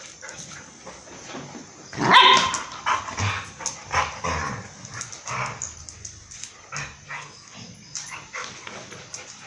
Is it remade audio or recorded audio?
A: recorded